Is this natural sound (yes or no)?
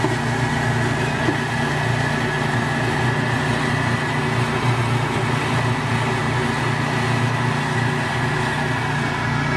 yes